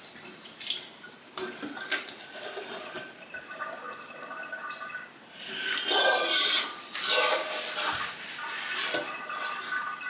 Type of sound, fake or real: real